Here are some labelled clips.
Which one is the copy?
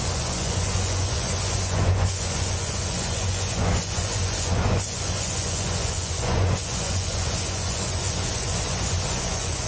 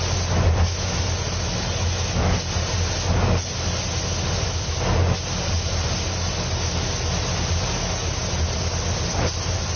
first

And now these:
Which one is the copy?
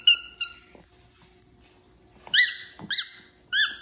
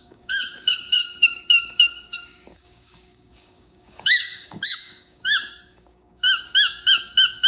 second